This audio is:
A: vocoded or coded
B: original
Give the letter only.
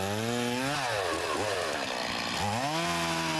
B